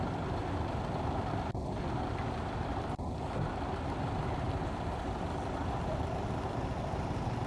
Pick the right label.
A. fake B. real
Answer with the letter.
B